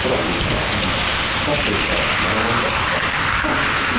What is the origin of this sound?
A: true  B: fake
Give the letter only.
A